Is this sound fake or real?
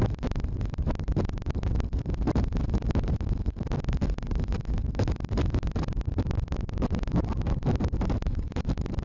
real